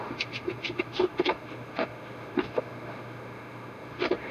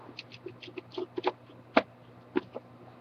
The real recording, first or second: second